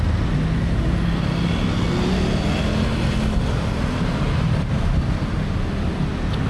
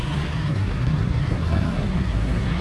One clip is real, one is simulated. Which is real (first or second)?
first